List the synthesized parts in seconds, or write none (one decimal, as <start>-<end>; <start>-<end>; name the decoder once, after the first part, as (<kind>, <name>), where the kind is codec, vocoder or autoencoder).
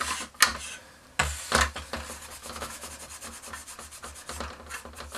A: 2.4-2.9 (autoencoder, DAC-VAE)